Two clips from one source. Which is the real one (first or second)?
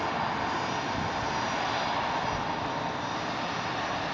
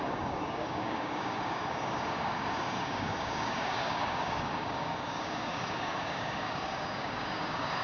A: first